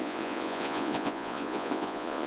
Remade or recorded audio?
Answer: remade